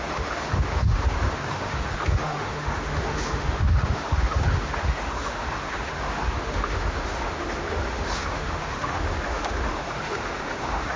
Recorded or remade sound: remade